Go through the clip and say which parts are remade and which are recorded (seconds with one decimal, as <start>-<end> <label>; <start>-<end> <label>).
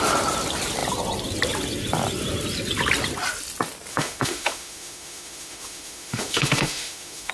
0.0-3.9 recorded; 3.9-7.3 remade